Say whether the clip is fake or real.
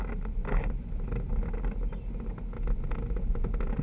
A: real